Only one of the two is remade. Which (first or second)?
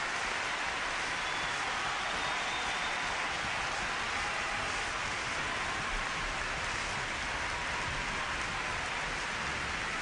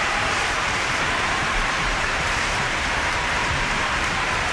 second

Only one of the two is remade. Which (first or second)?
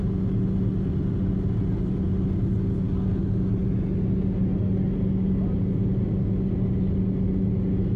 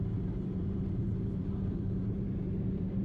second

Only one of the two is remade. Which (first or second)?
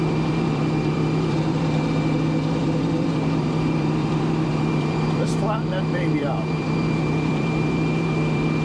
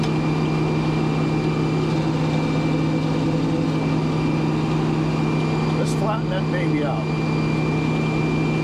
first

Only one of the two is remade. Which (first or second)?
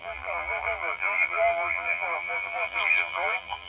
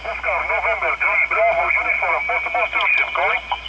first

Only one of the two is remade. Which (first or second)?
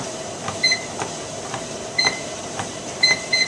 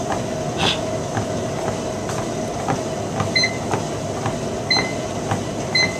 first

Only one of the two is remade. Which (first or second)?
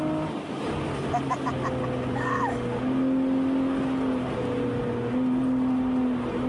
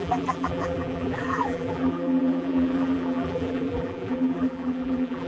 second